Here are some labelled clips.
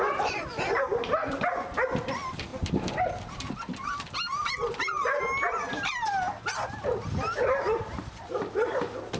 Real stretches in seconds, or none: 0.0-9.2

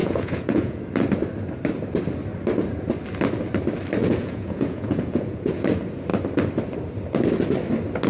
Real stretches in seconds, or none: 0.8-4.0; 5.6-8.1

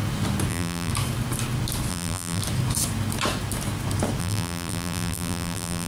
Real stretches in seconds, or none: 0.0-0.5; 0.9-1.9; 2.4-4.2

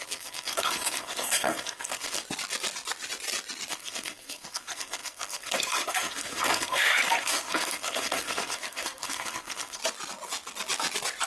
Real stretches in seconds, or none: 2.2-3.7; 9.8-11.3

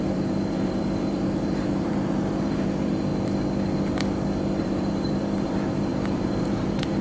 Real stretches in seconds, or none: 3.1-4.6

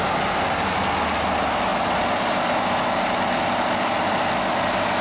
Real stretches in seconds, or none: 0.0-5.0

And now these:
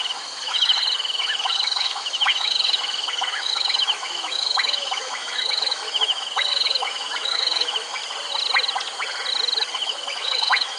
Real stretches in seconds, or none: 8.0-9.7